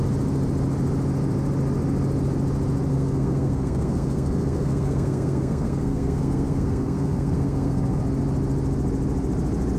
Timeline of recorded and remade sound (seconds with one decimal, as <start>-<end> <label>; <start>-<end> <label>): 0.0-2.9 recorded; 2.9-8.0 remade; 8.0-9.8 recorded